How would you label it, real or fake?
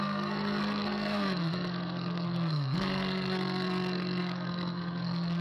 fake